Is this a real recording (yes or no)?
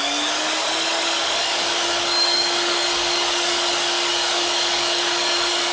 no